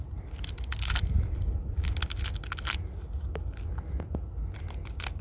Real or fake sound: real